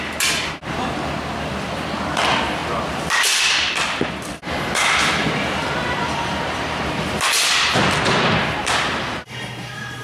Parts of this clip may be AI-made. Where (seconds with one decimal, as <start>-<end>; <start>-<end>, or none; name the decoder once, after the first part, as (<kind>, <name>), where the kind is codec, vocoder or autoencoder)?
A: 0.0-10.0 (vocoder, BigVGAN v2)